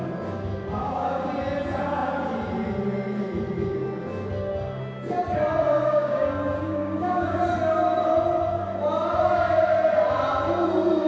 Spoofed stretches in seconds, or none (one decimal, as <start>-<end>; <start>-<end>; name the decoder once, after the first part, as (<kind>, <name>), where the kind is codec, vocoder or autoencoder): 0.8-1.3 (codec, DAC); 5.8-7.4